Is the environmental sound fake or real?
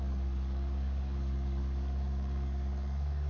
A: fake